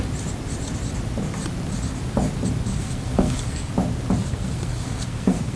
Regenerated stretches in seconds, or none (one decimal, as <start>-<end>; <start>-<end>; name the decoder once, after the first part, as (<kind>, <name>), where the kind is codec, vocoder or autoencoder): 2.7-3.7 (codec, SNAC); 4.2-5.6